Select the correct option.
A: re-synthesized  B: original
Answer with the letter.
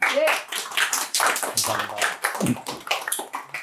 A